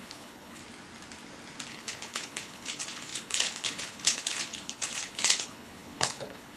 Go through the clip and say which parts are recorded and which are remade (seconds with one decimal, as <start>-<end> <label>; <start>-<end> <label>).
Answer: 0.0-0.6 remade; 0.6-1.7 recorded; 1.7-6.6 remade

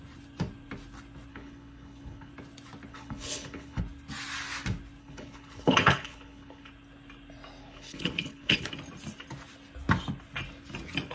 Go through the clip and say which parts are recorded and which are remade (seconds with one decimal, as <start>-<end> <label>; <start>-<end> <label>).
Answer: 0.0-1.3 recorded; 1.3-2.3 remade; 2.3-2.9 recorded; 2.9-3.8 remade; 3.8-5.0 recorded; 5.0-6.7 remade; 6.7-7.6 recorded; 7.6-8.7 remade; 8.7-11.1 recorded

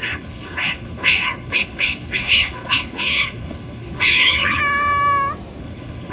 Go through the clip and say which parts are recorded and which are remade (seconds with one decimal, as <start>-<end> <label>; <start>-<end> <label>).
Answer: 0.0-4.6 remade; 4.6-5.6 recorded; 5.6-6.1 remade

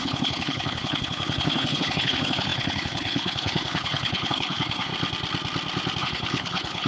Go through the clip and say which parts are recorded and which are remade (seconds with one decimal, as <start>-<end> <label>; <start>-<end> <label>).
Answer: 0.0-4.9 remade; 4.9-6.0 recorded; 6.0-6.9 remade